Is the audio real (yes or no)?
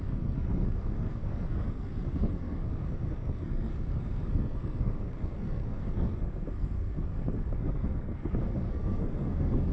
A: no